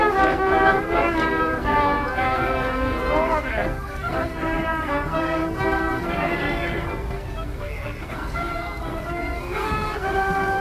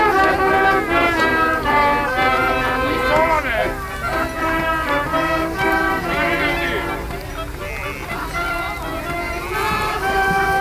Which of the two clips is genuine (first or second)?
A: second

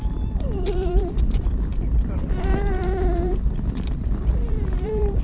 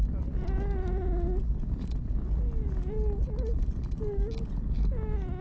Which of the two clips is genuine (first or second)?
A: second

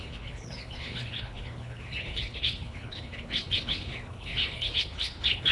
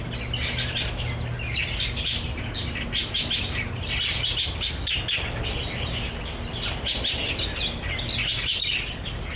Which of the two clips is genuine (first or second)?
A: second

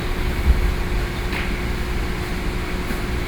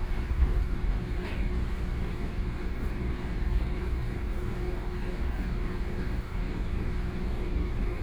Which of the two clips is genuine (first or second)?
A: first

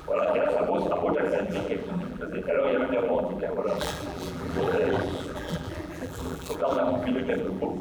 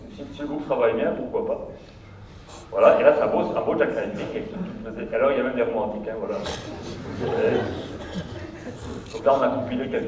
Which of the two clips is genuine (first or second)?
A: second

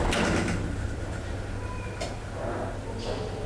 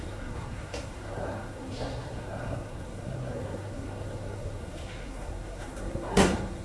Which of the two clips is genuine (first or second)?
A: first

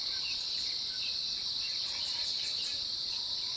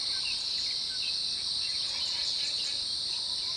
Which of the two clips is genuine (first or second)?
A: second